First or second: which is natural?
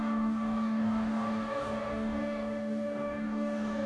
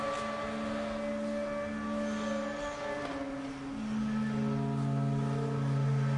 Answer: second